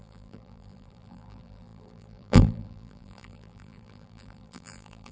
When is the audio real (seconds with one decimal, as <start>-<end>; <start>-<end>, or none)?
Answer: none